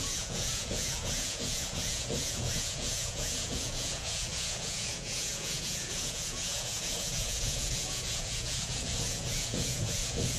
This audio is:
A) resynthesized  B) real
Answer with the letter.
A